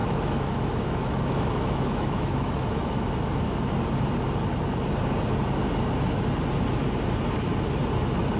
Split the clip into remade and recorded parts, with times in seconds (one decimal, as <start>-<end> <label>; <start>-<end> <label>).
0.0-3.1 remade; 3.1-8.4 recorded